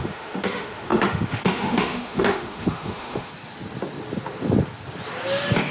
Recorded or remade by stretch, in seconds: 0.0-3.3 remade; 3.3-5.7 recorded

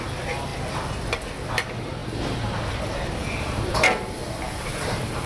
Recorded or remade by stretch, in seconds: 0.0-3.2 recorded; 3.2-3.7 remade; 3.7-4.2 recorded; 4.2-5.3 remade

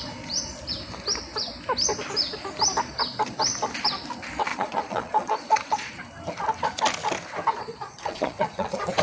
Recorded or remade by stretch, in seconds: 0.0-4.5 recorded; 4.5-5.9 remade; 5.9-7.7 recorded; 7.7-9.0 remade

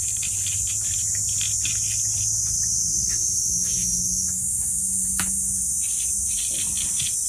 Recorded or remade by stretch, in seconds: 0.0-2.9 recorded; 2.9-5.4 remade; 5.4-7.3 recorded